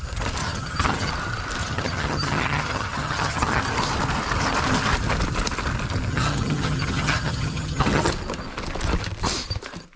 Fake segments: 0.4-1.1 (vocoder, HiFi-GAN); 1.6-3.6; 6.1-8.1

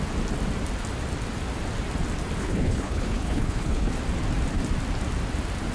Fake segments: 2.4-3.9 (codec, HILCodec)

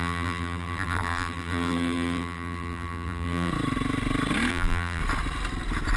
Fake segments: 0.0-3.5 (vocoder, BigVGAN v2); 4.5-5.0

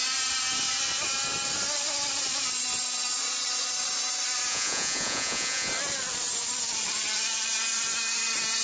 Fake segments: 4.5-5.7 (vocoder, Vocos)

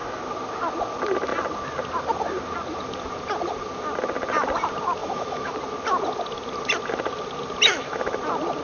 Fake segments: 5.0-5.5 (autoencoder, DAC-VAE); 7.7-8.2

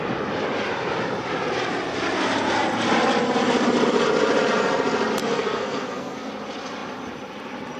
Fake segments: 5.2-6.3 (codec, SNAC)